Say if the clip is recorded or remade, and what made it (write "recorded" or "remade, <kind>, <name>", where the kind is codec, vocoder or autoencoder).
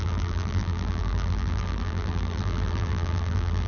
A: remade, vocoder, BigVGAN v2